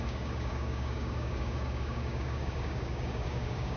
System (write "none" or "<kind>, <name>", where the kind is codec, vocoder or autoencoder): codec, DAC